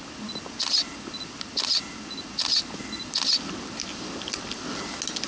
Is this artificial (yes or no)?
no